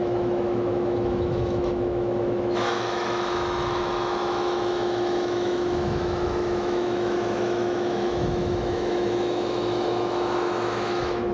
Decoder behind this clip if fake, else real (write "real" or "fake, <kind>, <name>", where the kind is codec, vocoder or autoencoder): fake, autoencoder, DAC-VAE